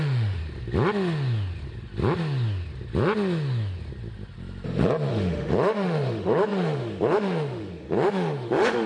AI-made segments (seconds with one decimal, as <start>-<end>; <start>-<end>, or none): 0.0-0.4; 5.1-8.9